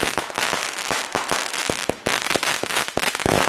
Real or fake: fake